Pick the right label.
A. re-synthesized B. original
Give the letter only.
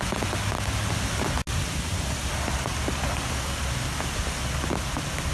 B